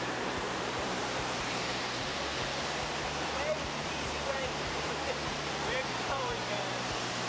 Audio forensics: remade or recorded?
remade